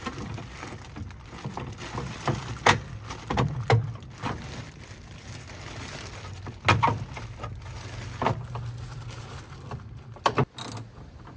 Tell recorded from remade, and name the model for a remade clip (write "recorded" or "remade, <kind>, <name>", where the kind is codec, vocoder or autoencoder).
recorded